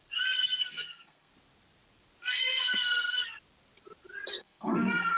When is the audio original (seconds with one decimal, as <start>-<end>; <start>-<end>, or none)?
0.0-0.6; 1.3-2.2; 3.2-4.4